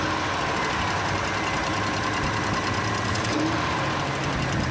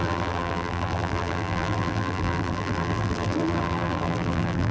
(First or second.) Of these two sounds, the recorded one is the first